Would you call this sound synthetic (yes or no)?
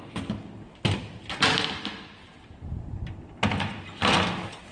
no